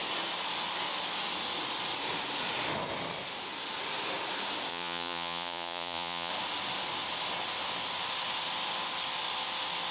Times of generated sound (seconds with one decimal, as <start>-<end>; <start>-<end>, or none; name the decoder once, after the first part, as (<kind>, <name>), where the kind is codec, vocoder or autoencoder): 4.7-6.3 (vocoder, Vocos)